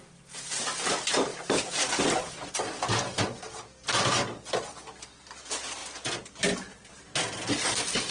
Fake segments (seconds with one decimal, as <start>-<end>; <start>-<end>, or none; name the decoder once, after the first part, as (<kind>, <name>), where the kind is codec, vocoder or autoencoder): 1.3-2.3 (vocoder, BigVGAN v2)